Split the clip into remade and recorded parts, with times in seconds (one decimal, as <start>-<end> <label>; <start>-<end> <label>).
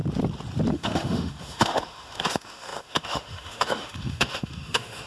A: 0.0-0.7 recorded; 0.7-5.1 remade